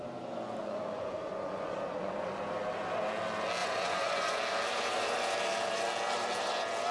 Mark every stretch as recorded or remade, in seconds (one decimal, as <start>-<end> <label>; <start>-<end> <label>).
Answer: 0.0-0.6 recorded; 0.6-2.4 remade; 2.4-3.6 recorded; 3.6-4.3 remade; 4.3-6.9 recorded